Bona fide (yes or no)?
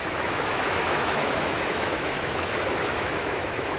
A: no